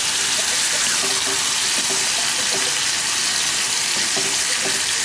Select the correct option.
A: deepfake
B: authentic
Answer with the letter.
B